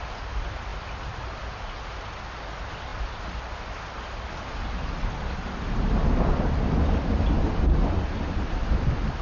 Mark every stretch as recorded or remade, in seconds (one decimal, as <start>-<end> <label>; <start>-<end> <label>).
0.0-9.2 recorded